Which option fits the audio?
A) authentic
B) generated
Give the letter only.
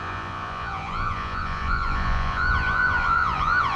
B